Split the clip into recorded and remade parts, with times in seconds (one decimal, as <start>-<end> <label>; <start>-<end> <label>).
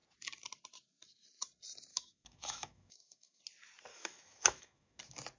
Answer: 0.0-1.9 recorded; 1.9-3.4 remade; 3.4-3.9 recorded; 3.9-5.0 remade; 5.0-5.4 recorded